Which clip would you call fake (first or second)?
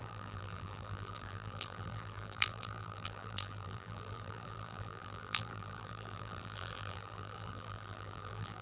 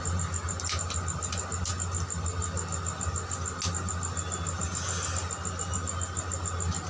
first